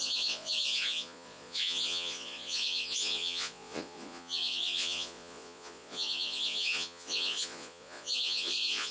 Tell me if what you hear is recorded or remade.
remade